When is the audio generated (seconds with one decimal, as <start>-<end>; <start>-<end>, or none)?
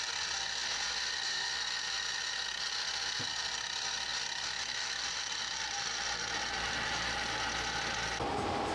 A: 4.1-6.7